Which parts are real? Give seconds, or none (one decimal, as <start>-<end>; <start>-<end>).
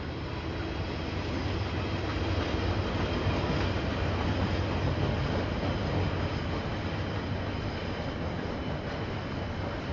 0.0-9.9